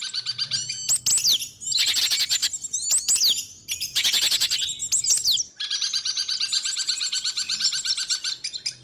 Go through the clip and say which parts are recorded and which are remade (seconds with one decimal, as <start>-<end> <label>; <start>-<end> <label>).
0.0-8.8 recorded